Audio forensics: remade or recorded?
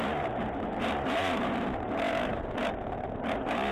remade